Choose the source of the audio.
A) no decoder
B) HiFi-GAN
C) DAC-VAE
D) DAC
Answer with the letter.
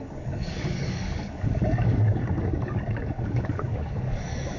D